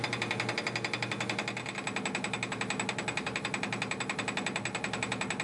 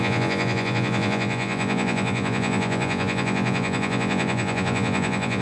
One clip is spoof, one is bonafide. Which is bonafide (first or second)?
first